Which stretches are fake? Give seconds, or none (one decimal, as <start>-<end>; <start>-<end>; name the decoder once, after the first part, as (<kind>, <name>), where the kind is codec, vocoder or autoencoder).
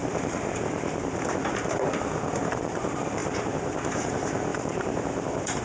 0.0-5.6 (vocoder, BigVGAN v2)